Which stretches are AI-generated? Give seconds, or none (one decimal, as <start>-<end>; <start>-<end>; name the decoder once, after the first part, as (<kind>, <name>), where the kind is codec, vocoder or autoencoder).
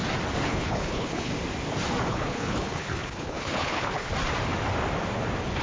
0.5-1.3 (codec, HILCodec); 2.1-4.1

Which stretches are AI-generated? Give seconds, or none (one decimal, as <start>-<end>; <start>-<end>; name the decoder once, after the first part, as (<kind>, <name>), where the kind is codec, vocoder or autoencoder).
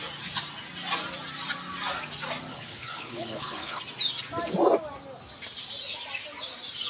2.5-3.8 (codec, HILCodec)